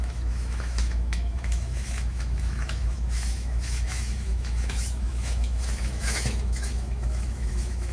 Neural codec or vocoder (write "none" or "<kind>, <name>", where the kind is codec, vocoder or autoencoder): autoencoder, DAC-VAE